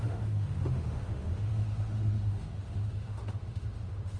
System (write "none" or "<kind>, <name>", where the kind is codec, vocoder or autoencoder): autoencoder, DAC-VAE